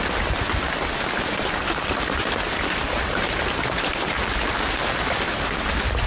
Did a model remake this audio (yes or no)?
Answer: no